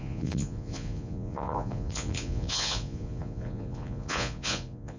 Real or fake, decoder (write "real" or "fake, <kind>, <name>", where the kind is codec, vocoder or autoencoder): fake, vocoder, Vocos